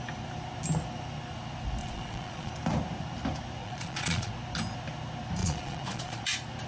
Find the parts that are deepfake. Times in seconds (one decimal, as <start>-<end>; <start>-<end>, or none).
1.8-2.5; 3.6-4.3; 5.4-6.2